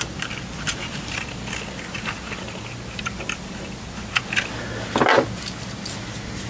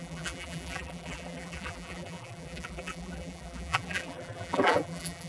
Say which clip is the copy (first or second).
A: second